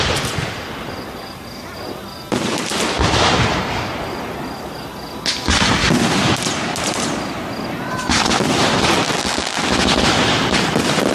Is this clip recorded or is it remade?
recorded